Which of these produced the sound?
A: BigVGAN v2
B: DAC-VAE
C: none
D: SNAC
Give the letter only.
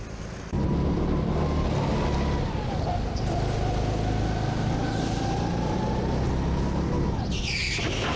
C